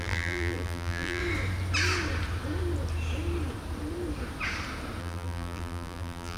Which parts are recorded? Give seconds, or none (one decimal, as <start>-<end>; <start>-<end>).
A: 1.2-5.0